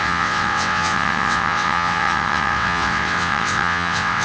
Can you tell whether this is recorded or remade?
remade